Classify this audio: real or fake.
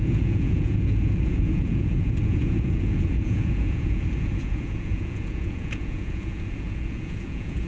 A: fake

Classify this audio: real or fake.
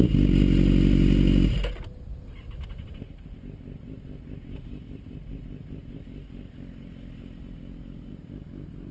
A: real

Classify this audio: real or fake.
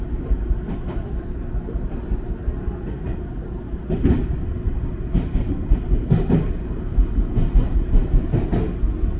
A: real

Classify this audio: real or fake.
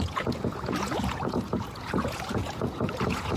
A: fake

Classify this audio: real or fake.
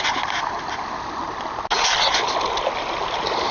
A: real